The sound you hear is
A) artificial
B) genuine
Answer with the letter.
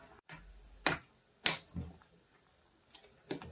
B